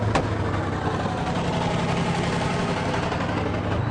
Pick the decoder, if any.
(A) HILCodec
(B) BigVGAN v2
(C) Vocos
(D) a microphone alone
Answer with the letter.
D